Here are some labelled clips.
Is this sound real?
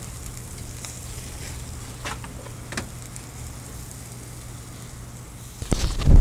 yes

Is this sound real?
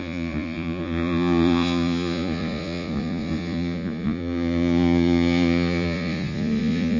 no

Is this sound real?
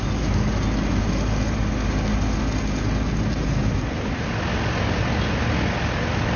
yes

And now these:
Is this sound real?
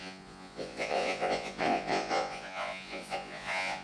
no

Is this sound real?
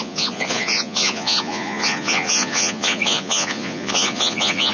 no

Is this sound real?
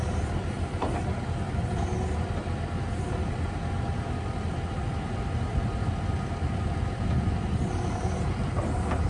yes